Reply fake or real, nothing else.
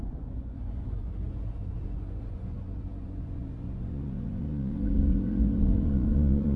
fake